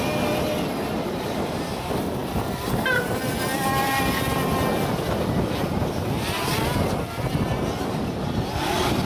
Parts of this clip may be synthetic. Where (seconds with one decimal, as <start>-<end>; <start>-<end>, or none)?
none